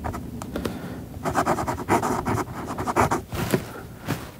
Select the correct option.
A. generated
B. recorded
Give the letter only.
B